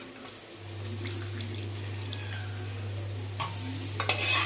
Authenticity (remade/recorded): recorded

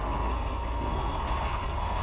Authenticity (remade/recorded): remade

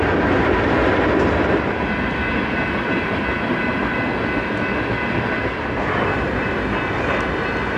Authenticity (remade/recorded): recorded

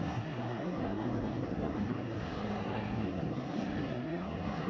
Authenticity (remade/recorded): remade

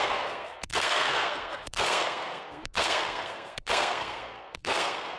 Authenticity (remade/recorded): remade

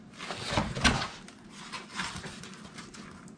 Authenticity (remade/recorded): recorded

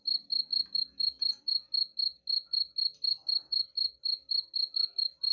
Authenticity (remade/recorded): recorded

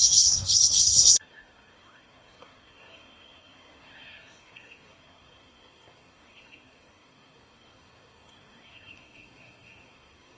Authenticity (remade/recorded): remade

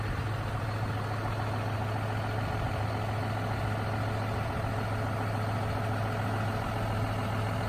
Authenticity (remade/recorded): recorded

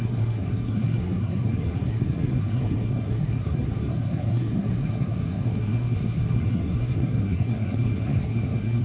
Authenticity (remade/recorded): remade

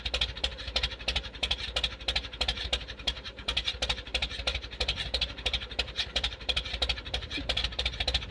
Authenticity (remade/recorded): recorded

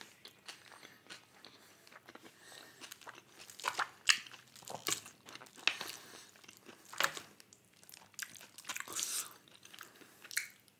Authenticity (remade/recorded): recorded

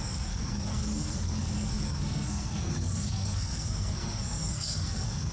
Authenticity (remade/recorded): remade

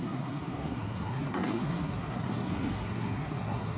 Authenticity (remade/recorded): remade